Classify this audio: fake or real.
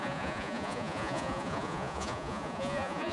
fake